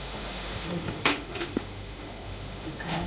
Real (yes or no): no